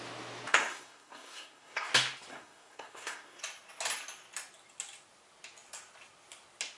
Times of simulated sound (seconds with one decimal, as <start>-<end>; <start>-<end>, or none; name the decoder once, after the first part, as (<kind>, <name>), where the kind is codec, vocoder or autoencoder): 0.6-1.9 (codec, SNAC); 2.3-3.4